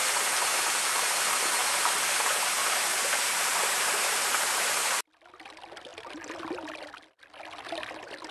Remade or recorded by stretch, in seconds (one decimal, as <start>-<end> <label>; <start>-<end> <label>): 0.0-2.6 recorded; 2.6-4.9 remade; 4.9-8.3 recorded